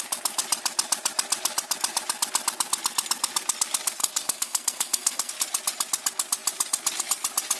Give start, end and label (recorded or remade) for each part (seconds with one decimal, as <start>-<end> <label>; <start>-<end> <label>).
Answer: 0.0-4.0 recorded; 4.0-5.3 remade; 5.3-7.6 recorded